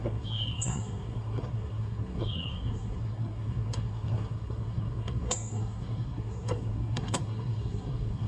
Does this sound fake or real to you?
fake